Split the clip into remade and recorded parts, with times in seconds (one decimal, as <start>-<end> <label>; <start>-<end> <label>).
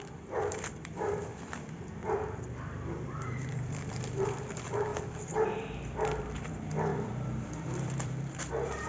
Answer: 0.0-1.3 remade; 1.3-3.1 recorded; 3.1-4.9 remade; 4.9-6.2 recorded; 6.2-8.9 remade